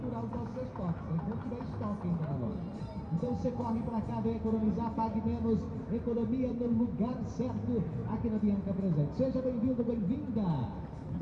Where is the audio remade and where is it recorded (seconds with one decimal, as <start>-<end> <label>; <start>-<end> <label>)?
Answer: 0.0-2.7 recorded; 2.7-4.1 remade; 4.1-6.5 recorded; 6.5-7.3 remade; 7.3-11.2 recorded